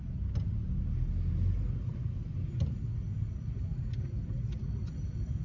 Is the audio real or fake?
real